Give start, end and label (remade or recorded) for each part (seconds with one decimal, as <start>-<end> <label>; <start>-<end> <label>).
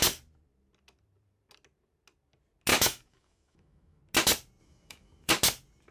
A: 0.0-2.7 recorded; 2.7-4.0 remade; 4.0-4.6 recorded; 4.6-5.3 remade; 5.3-5.9 recorded